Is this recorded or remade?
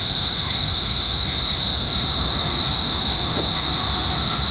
remade